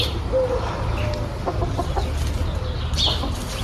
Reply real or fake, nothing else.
real